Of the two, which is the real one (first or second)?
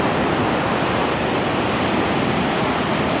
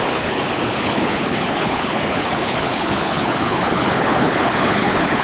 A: first